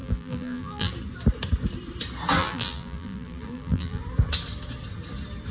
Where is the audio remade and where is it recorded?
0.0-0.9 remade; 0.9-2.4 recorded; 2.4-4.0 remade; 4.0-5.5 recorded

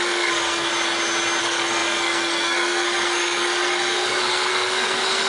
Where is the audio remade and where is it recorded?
0.0-0.7 remade; 0.7-1.4 recorded; 1.4-5.3 remade

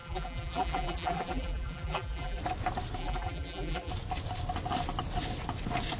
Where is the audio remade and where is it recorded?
0.0-2.4 remade; 2.4-3.0 recorded; 3.0-3.9 remade; 3.9-6.0 recorded

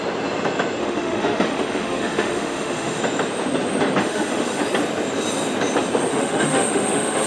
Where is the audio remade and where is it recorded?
0.0-0.8 recorded; 0.8-3.0 remade; 3.0-4.0 recorded; 4.0-4.6 remade; 4.6-6.1 recorded; 6.1-7.3 remade

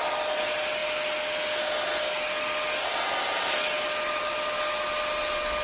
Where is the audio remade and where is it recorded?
0.0-5.6 recorded

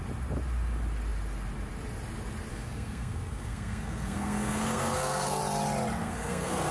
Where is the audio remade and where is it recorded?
0.0-2.5 recorded; 2.5-5.4 remade; 5.4-6.0 recorded; 6.0-6.7 remade

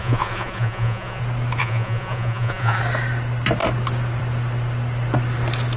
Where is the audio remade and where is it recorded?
0.0-1.2 remade; 1.2-1.6 recorded; 1.6-2.8 remade; 2.8-5.8 recorded

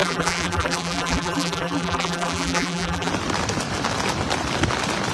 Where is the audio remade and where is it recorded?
0.0-3.1 remade; 3.1-5.1 recorded